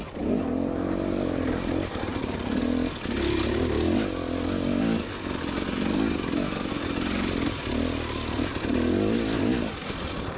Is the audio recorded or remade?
recorded